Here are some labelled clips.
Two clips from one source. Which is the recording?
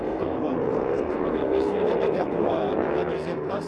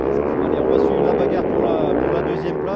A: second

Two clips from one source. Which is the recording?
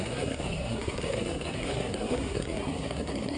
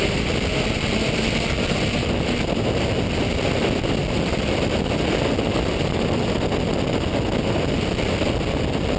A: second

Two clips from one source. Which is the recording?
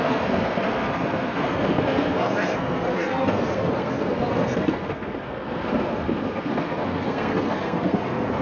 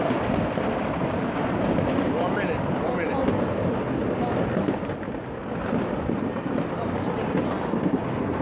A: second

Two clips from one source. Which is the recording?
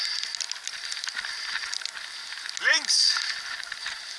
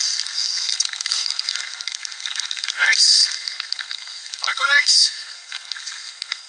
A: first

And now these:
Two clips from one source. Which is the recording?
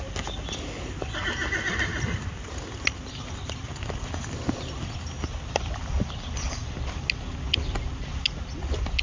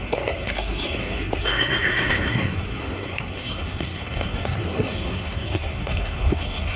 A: first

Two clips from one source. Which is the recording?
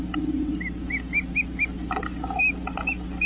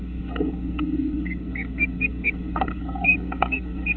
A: first